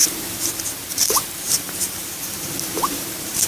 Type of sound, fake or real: fake